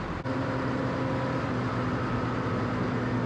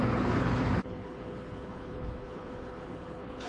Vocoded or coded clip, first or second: second